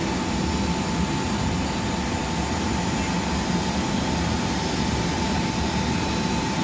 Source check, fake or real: real